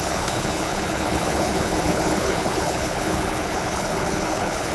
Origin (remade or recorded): remade